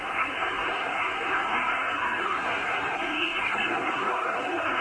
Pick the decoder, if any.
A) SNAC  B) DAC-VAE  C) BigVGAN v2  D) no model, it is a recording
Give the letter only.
A